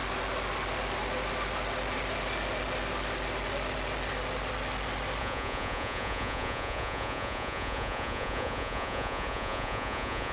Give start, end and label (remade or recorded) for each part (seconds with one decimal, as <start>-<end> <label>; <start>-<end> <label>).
0.0-5.2 recorded; 5.2-10.3 remade